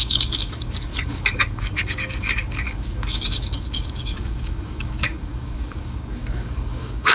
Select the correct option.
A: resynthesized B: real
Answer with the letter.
A